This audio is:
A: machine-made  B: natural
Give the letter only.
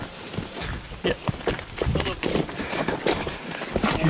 B